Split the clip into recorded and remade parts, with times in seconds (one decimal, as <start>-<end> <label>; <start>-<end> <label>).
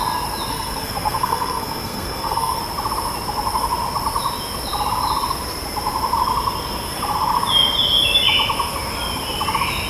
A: 0.0-0.5 recorded; 0.5-2.6 remade; 2.6-9.9 recorded